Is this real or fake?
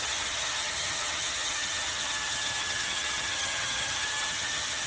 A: fake